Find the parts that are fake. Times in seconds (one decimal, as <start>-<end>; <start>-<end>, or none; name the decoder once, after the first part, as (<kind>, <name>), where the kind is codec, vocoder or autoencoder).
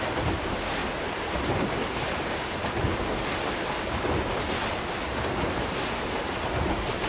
0.0-0.8 (vocoder, BigVGAN v2); 5.1-7.1